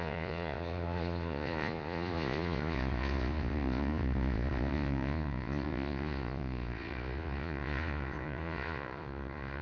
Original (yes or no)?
no